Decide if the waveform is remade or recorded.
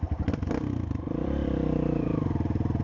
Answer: remade